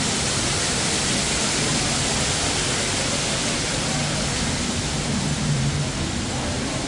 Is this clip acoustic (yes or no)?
yes